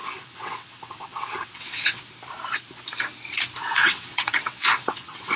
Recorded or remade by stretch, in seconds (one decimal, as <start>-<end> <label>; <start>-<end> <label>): 0.0-2.0 remade; 2.0-3.6 recorded; 3.6-5.4 remade